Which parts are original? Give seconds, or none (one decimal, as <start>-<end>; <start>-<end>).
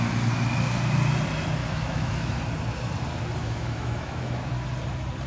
0.0-1.6; 2.4-3.4; 4.5-5.3